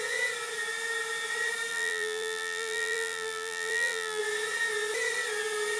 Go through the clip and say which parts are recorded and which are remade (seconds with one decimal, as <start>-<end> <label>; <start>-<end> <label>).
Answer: 0.0-1.7 recorded; 1.7-4.2 remade; 4.2-5.8 recorded